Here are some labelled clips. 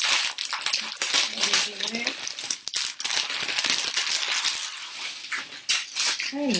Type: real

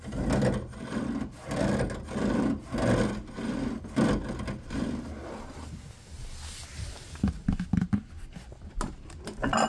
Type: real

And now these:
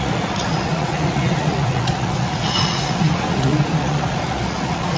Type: fake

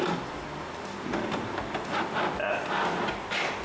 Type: real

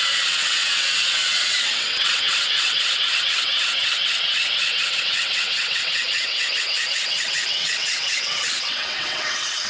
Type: fake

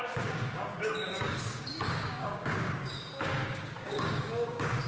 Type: fake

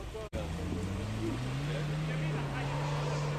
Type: real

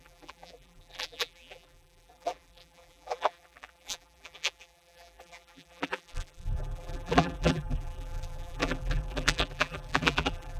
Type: fake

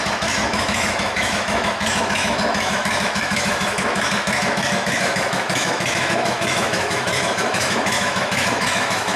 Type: fake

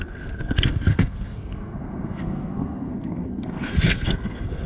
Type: fake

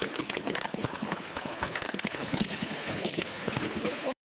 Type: fake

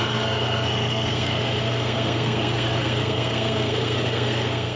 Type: fake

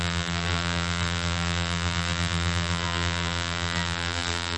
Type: fake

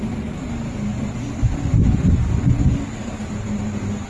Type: real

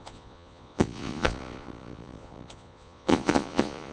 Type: fake